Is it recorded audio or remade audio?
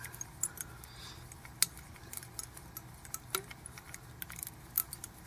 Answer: recorded